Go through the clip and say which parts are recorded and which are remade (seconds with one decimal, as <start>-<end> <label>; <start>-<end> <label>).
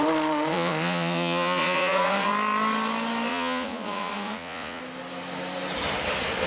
0.0-0.5 recorded; 0.5-2.3 remade; 2.3-3.3 recorded; 3.3-4.8 remade; 4.8-6.5 recorded